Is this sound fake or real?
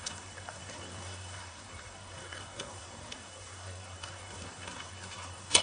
fake